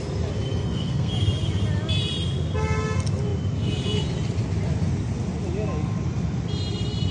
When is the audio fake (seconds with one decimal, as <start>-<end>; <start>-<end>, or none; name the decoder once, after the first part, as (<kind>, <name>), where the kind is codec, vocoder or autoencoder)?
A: 0.5-1.1 (codec, SNAC)